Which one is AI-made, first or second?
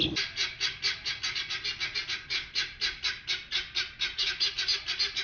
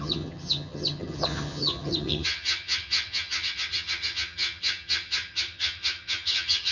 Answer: second